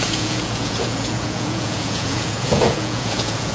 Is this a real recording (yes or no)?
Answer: no